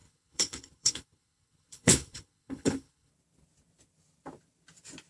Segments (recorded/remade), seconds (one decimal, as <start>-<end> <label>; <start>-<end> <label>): 0.0-3.1 remade; 3.1-5.1 recorded